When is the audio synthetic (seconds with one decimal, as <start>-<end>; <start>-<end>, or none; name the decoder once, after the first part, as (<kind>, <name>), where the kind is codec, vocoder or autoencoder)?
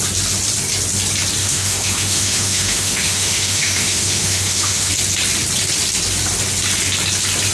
1.4-4.9 (autoencoder, DAC-VAE)